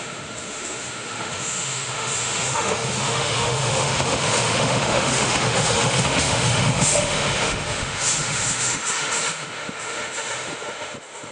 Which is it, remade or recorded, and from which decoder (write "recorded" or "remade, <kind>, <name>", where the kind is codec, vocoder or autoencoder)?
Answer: remade, autoencoder, DAC-VAE